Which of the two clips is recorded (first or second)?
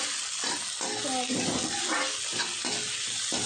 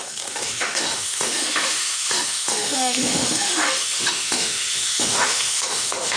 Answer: first